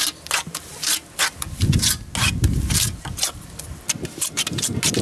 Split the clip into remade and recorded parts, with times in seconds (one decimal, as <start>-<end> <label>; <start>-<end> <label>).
0.0-5.0 recorded